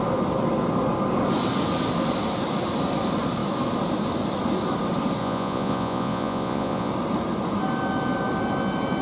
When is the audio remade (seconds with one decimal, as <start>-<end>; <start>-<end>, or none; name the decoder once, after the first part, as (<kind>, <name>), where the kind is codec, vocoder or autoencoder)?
5.2-6.9 (vocoder, Vocos)